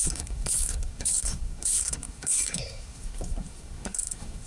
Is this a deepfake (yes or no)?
yes